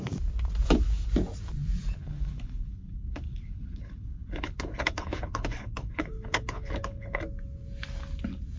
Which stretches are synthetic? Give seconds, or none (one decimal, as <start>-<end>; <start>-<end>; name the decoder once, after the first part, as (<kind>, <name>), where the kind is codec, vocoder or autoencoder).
2.0-7.2 (codec, HILCodec)